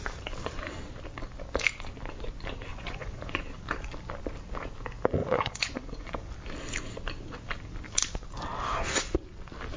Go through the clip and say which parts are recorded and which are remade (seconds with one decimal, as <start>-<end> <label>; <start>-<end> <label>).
0.0-2.7 recorded; 2.7-3.4 remade; 3.4-5.2 recorded; 5.2-6.3 remade; 6.3-9.8 recorded